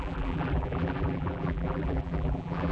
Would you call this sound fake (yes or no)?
yes